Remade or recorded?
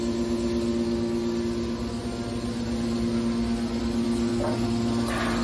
recorded